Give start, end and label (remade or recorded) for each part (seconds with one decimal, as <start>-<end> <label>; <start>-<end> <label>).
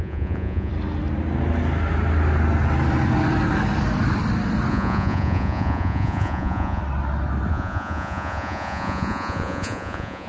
0.0-0.7 remade; 0.7-4.7 recorded; 4.7-6.8 remade; 6.8-7.5 recorded; 7.5-10.3 remade